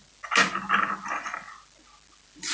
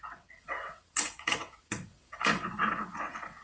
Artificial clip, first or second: second